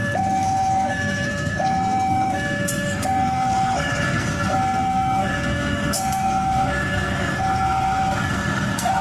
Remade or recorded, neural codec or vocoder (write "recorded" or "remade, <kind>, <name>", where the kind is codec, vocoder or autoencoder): remade, codec, SNAC